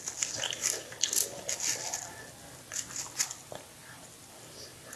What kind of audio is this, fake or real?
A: real